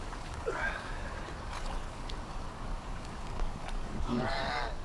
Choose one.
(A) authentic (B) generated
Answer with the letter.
B